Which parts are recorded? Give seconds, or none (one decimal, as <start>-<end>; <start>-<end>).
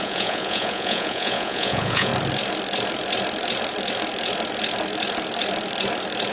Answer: 2.1-6.3